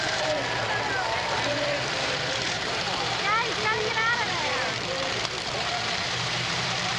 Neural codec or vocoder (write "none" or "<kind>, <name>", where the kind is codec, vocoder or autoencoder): vocoder, BigVGAN v2